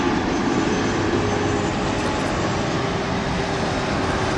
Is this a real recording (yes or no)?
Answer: yes